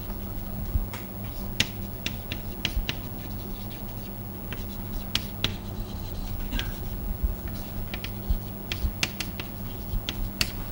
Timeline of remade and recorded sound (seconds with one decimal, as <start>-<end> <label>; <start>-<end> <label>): 0.0-5.5 recorded; 5.5-6.3 remade; 6.3-10.7 recorded